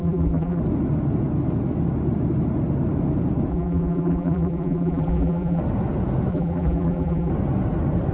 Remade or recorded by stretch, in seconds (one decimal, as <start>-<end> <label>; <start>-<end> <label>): 0.0-0.6 remade; 0.6-3.5 recorded; 3.5-5.6 remade; 5.6-6.3 recorded; 6.3-7.3 remade; 7.3-8.1 recorded